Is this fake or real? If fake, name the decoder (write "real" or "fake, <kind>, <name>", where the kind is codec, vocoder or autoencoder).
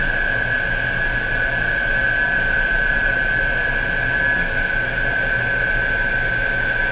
real